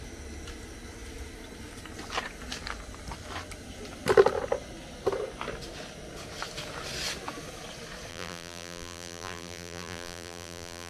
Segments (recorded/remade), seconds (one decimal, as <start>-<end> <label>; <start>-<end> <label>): 0.0-8.1 recorded; 8.1-10.9 remade